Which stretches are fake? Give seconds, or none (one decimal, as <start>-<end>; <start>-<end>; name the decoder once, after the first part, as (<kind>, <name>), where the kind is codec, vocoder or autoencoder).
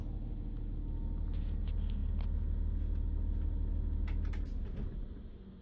none